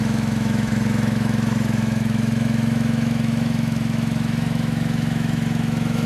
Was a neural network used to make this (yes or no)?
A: yes